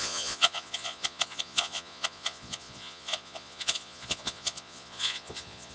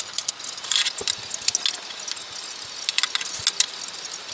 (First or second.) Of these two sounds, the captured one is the second